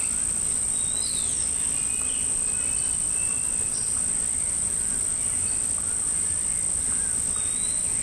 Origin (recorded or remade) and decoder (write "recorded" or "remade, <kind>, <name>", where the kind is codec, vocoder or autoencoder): recorded